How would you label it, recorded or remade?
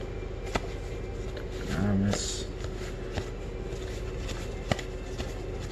recorded